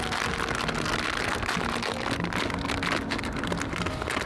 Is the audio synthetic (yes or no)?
no